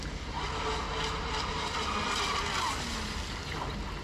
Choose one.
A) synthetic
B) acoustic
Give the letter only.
B